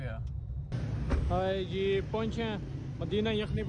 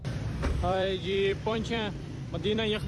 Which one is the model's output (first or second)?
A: second